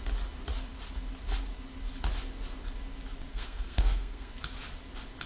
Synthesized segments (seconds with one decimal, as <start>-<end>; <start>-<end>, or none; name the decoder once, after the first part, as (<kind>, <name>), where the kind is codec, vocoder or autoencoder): 3.3-4.3 (codec, SNAC)